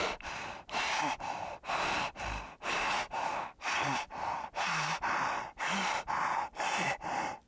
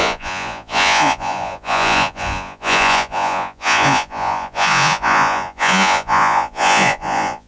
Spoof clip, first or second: second